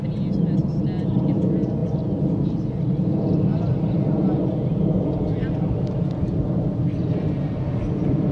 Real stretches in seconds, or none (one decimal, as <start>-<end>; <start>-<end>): 0.0-8.3